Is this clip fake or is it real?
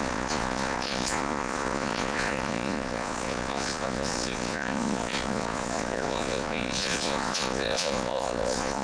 fake